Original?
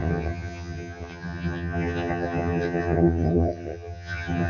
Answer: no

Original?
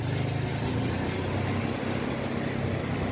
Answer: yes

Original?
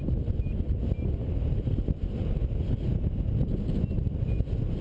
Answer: yes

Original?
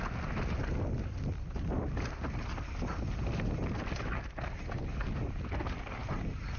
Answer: yes